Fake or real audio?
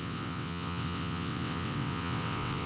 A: fake